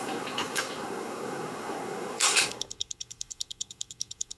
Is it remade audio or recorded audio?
remade